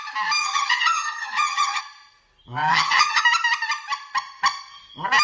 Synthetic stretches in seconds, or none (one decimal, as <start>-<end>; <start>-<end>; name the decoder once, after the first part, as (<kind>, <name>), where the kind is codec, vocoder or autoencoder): 0.4-1.8 (vocoder, HiFi-GAN); 2.7-3.2

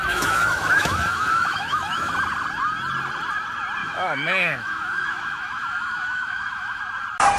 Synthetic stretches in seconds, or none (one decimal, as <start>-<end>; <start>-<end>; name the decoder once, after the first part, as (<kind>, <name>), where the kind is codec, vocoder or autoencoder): 0.0-2.2 (autoencoder, DAC-VAE); 3.8-6.8

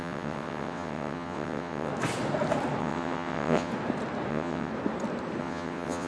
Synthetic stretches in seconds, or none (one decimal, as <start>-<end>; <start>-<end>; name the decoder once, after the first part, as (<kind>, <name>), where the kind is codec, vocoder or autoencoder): 0.0-1.9 (vocoder, WaveNeXt); 2.8-3.7; 4.3-4.7; 5.4-6.1

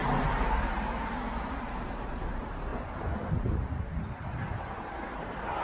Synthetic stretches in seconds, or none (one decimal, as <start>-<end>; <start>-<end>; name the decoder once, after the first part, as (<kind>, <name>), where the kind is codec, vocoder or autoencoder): 0.0-2.7 (vocoder, BigVGAN v2); 4.0-5.6

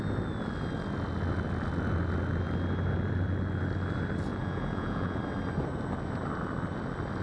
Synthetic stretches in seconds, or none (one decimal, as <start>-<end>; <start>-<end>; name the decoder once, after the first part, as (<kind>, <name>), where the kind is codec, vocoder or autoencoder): 4.3-5.2 (vocoder, Vocos)

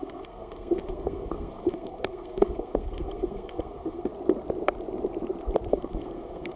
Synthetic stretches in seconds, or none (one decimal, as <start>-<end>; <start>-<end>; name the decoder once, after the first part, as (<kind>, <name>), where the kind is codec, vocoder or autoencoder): 0.0-4.1 (codec, SNAC); 5.7-6.6

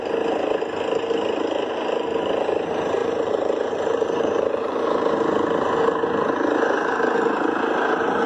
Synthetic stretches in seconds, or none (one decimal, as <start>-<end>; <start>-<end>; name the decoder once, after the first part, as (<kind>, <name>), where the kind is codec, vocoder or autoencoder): 3.0-5.1 (vocoder, BigVGAN v2)